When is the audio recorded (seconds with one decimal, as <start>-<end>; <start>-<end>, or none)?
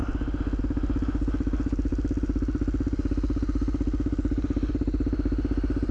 0.0-5.9